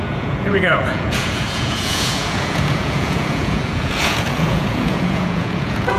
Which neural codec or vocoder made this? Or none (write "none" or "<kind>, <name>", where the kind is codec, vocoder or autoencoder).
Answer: vocoder, Vocos